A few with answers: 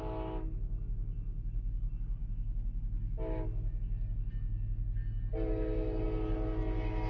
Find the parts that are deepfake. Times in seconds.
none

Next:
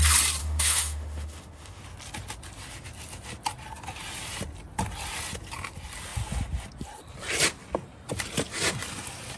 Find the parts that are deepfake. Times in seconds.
0.4-1.8 (autoencoder, DAC-VAE)

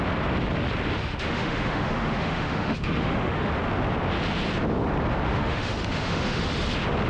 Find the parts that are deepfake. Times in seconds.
1.0-3.5 (autoencoder, DAC-VAE); 5.3-6.4

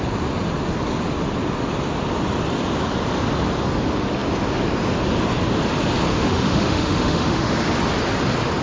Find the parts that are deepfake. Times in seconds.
6.1-7.5 (autoencoder, DAC-VAE)

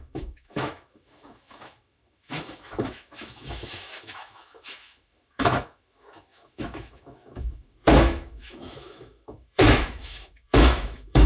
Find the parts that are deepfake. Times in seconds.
0.0-11.3 (autoencoder, DAC-VAE)